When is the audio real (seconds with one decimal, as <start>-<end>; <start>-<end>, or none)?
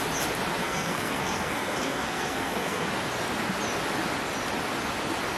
0.0-0.6; 2.9-5.4